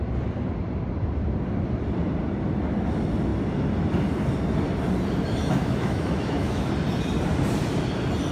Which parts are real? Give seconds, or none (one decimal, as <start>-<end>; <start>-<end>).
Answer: 0.0-5.4; 6.7-8.3